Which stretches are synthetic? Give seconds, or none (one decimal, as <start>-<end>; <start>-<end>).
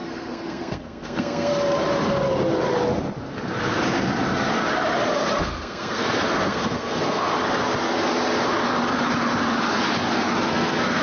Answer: 0.0-1.5; 5.4-7.3; 10.5-11.0